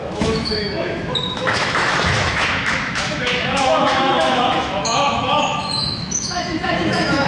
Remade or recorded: remade